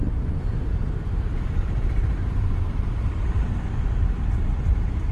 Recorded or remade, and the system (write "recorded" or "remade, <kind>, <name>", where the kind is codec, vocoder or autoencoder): remade, vocoder, BigVGAN v2